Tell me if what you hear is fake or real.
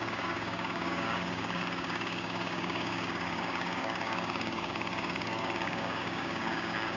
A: fake